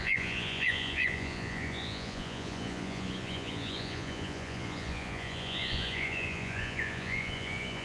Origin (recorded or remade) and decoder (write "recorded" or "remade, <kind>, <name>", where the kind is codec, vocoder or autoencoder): remade, vocoder, Vocos